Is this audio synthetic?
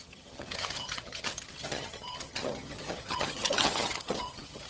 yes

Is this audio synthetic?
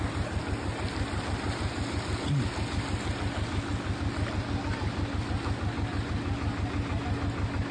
no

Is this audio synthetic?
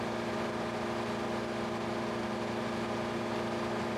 no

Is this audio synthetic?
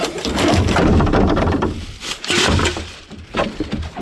yes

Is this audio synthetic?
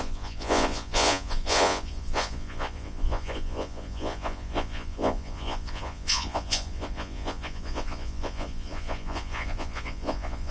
yes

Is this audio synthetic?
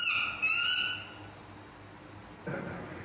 no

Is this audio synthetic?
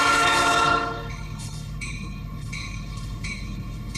yes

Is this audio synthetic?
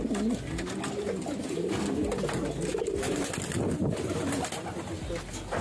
no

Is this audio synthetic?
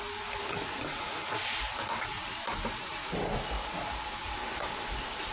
no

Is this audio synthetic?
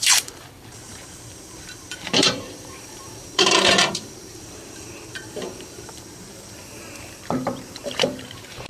yes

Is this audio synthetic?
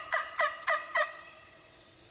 yes